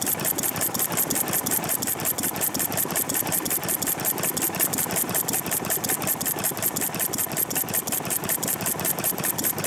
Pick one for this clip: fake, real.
real